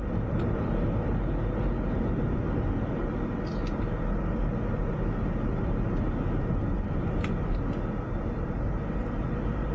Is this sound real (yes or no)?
yes